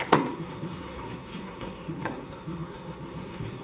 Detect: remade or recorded remade